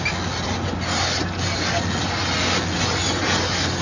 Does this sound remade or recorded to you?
recorded